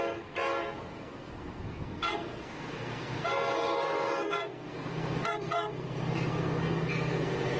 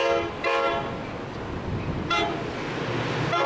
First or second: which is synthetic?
first